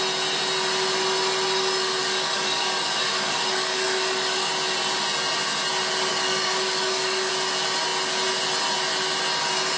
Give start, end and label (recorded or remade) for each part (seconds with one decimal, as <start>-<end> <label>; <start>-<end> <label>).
0.0-2.0 recorded; 2.0-4.5 remade; 4.5-6.1 recorded; 6.1-7.3 remade; 7.3-9.8 recorded